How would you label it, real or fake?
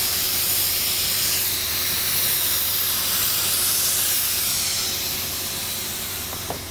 real